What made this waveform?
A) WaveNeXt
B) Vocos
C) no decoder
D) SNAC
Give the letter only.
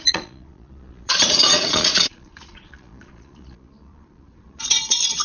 B